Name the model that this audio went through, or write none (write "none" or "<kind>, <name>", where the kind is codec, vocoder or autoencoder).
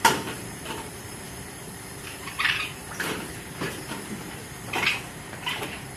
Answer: vocoder, BigVGAN v2